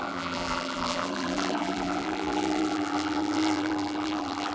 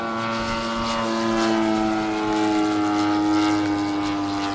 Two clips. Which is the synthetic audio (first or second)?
first